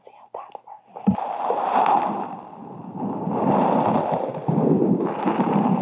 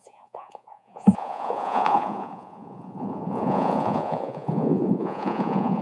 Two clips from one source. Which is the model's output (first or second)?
second